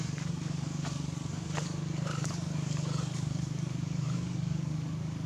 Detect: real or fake fake